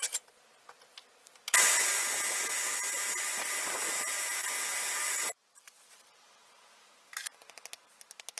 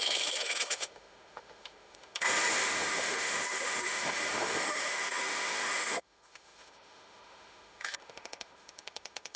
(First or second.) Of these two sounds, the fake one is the second